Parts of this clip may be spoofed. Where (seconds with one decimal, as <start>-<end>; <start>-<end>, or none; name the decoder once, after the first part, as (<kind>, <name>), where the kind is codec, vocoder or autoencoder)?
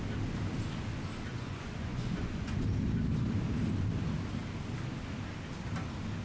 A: 1.3-2.6 (vocoder, Vocos)